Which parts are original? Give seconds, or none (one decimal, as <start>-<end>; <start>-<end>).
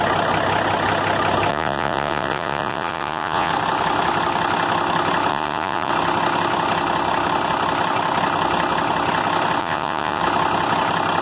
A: 0.0-1.5; 3.5-5.3; 5.9-9.6; 10.2-11.2